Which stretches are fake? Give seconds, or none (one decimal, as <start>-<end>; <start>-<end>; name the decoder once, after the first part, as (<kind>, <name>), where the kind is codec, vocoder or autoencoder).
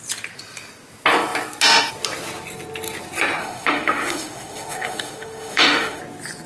3.4-6.0 (autoencoder, DAC-VAE)